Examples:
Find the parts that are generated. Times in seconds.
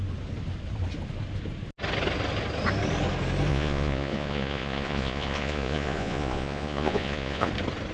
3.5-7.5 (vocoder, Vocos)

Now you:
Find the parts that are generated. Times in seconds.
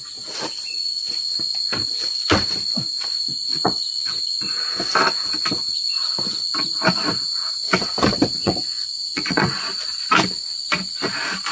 3.3-4.2 (vocoder, Vocos); 8.4-9.7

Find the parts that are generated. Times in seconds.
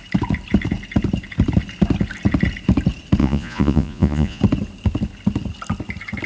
3.2-4.4 (vocoder, Vocos)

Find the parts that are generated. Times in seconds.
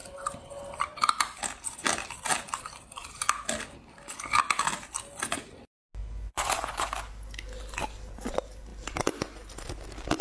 6.0-6.9 (vocoder, Vocos)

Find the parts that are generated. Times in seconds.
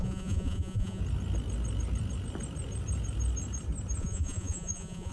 0.0-1.0 (vocoder, Vocos); 4.0-5.1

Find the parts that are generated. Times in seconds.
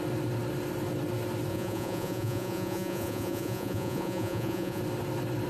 1.5-4.8 (vocoder, Vocos)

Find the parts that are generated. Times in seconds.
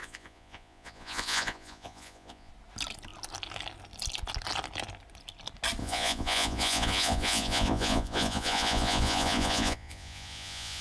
0.0-2.5 (vocoder, Vocos); 5.8-10.8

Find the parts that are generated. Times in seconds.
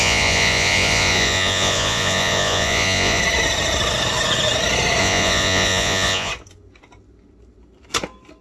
0.0-3.2 (vocoder, Vocos); 5.0-6.3